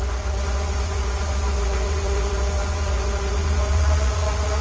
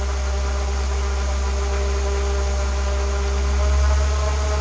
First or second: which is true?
second